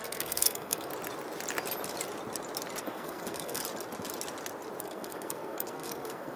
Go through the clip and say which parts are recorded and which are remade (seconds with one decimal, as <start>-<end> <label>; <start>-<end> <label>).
0.0-0.9 remade; 0.9-2.8 recorded; 2.8-3.6 remade; 3.6-4.8 recorded; 4.8-6.4 remade